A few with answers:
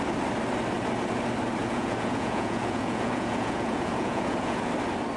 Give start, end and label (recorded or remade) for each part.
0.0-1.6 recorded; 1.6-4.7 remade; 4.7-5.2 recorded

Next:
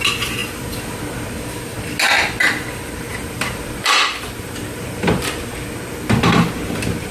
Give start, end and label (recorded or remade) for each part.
0.0-3.1 recorded; 3.1-5.5 remade; 5.5-7.1 recorded

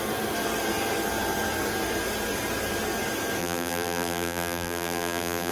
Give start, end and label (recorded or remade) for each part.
0.0-3.4 recorded; 3.4-5.5 remade